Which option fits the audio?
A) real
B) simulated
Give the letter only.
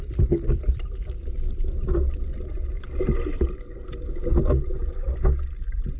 A